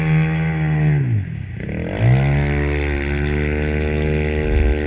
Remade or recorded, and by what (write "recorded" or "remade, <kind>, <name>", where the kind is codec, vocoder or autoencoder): recorded